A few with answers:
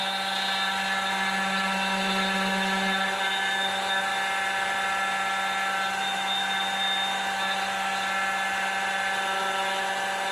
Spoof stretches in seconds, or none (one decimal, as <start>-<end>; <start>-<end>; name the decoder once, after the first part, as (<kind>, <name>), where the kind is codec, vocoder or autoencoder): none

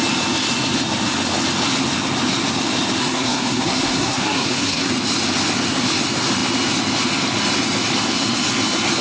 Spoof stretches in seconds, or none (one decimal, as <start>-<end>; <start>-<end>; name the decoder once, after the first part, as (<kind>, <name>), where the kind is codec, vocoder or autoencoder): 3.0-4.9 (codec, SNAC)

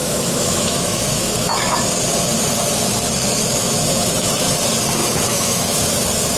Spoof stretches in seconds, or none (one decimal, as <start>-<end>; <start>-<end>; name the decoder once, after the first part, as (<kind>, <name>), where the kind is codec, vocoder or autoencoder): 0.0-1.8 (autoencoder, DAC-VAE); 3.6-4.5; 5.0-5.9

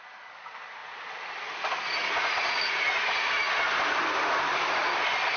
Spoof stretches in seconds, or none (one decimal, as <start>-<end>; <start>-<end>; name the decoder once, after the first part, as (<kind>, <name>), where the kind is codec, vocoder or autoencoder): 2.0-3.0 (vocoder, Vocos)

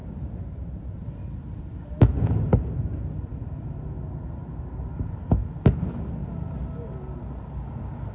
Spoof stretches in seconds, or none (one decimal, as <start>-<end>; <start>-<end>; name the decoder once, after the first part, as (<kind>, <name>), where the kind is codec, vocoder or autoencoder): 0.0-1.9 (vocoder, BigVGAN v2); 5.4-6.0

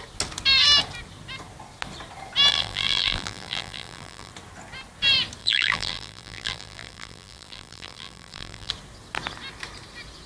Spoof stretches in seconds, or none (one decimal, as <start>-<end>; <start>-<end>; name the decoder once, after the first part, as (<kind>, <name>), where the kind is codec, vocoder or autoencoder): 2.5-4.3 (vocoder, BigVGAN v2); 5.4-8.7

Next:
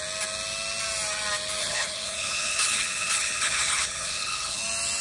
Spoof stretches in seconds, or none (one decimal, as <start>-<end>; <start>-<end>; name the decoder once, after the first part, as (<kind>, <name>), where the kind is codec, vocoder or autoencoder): 1.6-4.6 (codec, HILCodec)